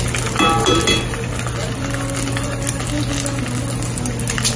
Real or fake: real